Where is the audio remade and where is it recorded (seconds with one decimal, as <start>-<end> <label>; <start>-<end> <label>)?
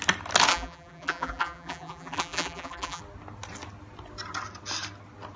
0.0-0.5 recorded; 0.5-3.0 remade; 3.0-5.4 recorded